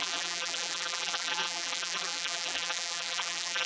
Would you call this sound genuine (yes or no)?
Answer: no